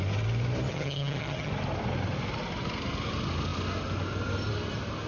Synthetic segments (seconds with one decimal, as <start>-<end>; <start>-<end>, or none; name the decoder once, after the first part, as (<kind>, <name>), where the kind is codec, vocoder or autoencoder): 0.7-1.5 (vocoder, HiFi-GAN)

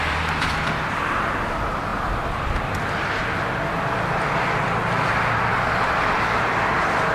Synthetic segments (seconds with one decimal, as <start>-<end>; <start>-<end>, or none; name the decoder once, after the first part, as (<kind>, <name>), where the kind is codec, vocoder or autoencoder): none

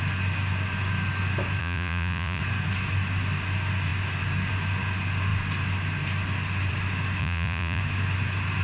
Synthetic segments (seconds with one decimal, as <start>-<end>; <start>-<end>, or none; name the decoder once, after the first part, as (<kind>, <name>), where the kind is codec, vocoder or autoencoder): 1.6-2.4 (vocoder, Vocos); 7.2-7.8

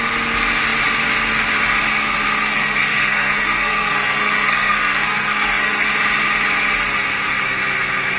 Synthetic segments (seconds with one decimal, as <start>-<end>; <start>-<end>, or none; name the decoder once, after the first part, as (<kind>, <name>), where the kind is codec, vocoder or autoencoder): 2.4-5.9 (codec, SNAC)

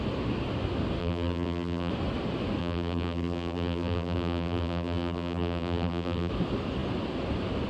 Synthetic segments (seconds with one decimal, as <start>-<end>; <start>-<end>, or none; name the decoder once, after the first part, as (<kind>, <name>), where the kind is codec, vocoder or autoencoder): 1.0-1.9 (vocoder, BigVGAN v2); 2.6-6.3